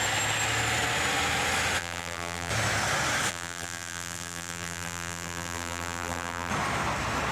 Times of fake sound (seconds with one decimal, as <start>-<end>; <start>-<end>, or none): 1.8-2.5; 3.3-6.5